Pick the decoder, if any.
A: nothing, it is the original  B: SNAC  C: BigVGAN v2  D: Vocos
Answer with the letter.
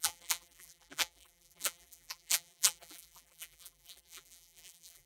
C